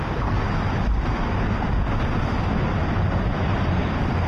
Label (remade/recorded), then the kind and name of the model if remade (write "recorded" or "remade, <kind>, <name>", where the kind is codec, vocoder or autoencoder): recorded